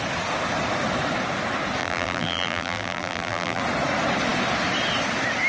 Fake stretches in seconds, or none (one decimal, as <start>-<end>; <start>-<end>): 1.8-3.6